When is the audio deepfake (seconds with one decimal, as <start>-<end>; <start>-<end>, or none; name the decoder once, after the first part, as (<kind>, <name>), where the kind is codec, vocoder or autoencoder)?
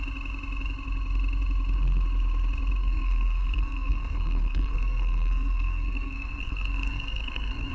2.8-7.7 (codec, SNAC)